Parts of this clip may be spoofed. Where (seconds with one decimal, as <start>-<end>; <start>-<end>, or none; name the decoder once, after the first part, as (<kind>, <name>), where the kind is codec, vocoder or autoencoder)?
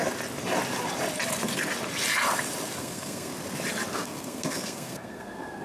2.8-3.3 (codec, SNAC); 3.9-5.6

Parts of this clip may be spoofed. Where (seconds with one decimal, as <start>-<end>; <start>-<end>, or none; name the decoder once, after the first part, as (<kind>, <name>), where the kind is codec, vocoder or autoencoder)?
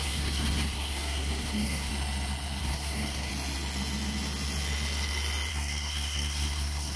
0.0-1.9 (codec, SNAC); 2.6-3.3; 5.5-7.0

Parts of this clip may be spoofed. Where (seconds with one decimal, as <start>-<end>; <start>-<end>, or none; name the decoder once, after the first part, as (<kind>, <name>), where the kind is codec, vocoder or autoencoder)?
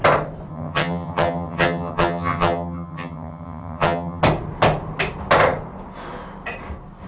0.5-4.2 (vocoder, HiFi-GAN)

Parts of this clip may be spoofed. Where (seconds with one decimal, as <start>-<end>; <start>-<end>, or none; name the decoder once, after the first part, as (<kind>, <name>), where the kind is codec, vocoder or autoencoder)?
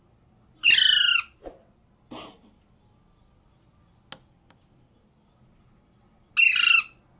none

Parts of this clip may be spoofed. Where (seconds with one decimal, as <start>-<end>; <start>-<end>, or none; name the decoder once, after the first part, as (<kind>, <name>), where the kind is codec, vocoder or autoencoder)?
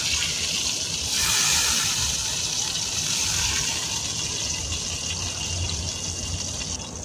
none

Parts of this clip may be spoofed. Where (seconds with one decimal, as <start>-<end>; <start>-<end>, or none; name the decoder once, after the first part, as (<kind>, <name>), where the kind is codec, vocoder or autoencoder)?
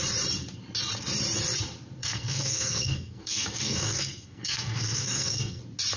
2.0-5.6 (codec, SNAC)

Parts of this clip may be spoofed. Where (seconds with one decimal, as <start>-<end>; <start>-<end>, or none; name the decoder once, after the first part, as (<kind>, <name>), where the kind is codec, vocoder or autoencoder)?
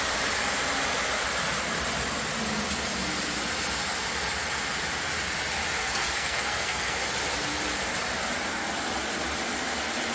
5.8-7.0 (codec, SNAC)